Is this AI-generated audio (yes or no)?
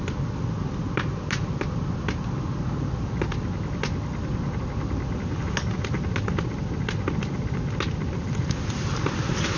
no